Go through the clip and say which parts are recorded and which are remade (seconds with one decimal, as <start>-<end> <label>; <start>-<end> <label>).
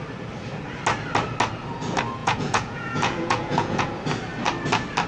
0.0-2.2 recorded; 2.2-3.9 remade; 3.9-5.1 recorded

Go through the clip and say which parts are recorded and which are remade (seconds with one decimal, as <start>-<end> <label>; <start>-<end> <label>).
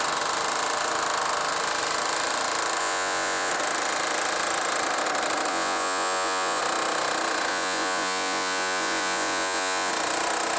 0.0-2.8 recorded; 2.8-3.5 remade; 3.5-5.5 recorded; 5.5-6.6 remade; 6.6-7.5 recorded; 7.5-9.9 remade; 9.9-10.6 recorded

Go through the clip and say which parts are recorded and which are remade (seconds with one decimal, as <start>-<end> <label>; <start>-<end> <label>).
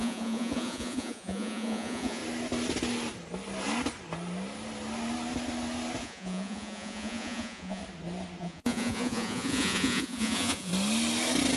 0.0-2.2 remade; 2.2-6.0 recorded; 6.0-7.8 remade; 7.8-8.4 recorded; 8.4-10.7 remade; 10.7-11.6 recorded